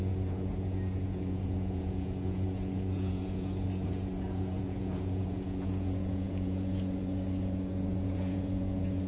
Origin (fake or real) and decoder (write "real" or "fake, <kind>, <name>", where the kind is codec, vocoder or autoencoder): fake, vocoder, Vocos